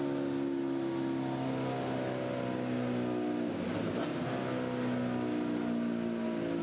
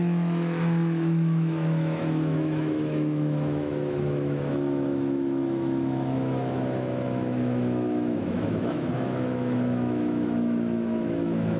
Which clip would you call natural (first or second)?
first